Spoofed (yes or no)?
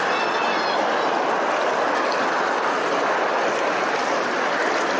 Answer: no